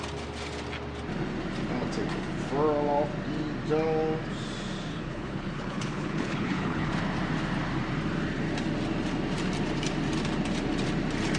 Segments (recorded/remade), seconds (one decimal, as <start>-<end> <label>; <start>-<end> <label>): 0.0-4.9 recorded; 4.9-6.9 remade; 6.9-11.4 recorded